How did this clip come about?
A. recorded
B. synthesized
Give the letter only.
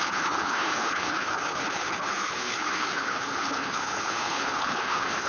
B